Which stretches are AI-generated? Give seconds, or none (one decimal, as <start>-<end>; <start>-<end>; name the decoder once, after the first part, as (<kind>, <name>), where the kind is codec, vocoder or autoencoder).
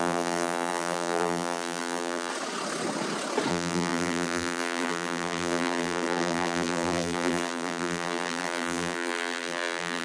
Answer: 0.0-2.3 (vocoder, BigVGAN v2); 3.5-10.0